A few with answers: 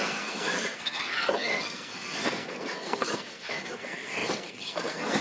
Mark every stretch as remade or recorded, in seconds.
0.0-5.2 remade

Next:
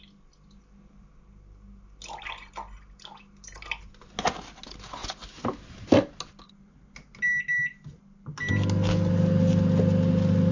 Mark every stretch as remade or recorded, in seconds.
0.0-10.5 recorded

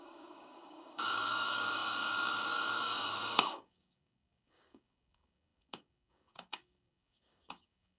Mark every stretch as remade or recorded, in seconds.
0.0-8.0 remade